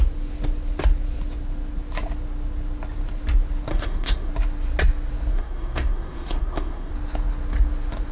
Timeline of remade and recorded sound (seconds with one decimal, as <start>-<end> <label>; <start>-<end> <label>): 0.0-3.7 recorded; 3.7-4.3 remade; 4.3-5.3 recorded; 5.3-6.9 remade; 6.9-8.1 recorded